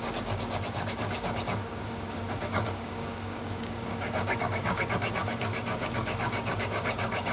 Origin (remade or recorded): remade